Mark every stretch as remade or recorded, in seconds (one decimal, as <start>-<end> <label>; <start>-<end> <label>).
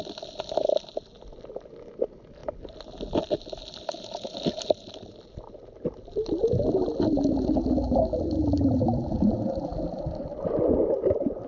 0.0-11.5 recorded